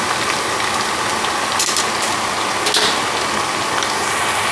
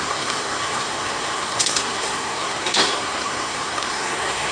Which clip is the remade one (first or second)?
second